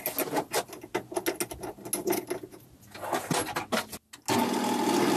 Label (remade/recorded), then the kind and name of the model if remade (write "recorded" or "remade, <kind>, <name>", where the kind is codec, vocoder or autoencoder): recorded